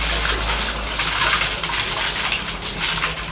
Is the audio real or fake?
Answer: real